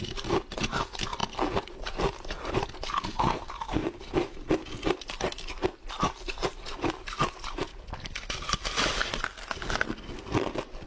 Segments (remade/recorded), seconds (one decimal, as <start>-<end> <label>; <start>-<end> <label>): 0.0-3.8 remade; 3.8-5.9 recorded; 5.9-10.9 remade